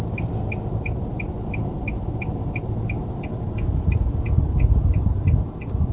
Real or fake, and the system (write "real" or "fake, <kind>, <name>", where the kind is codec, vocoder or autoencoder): real